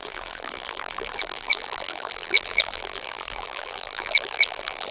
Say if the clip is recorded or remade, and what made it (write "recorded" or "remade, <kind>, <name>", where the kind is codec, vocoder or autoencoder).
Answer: remade, vocoder, BigVGAN v2